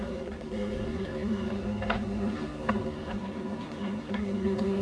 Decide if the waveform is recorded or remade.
remade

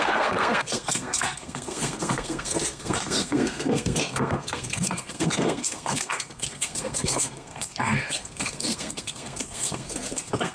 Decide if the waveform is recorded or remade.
remade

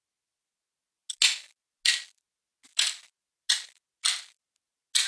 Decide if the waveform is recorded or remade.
recorded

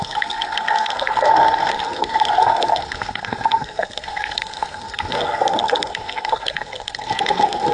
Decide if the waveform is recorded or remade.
remade